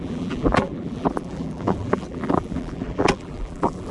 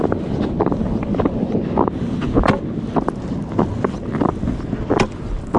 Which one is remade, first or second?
first